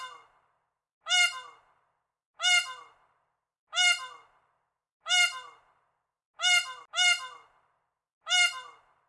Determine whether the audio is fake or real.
real